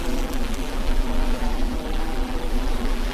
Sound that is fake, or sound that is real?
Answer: fake